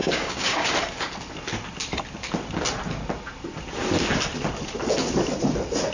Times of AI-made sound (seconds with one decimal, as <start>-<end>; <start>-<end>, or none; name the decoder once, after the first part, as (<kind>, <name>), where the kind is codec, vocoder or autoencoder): 0.0-0.7 (codec, DAC)